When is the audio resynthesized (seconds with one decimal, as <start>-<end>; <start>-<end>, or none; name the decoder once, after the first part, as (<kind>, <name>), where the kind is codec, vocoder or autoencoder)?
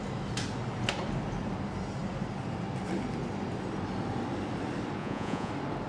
5.0-5.5 (vocoder, Vocos)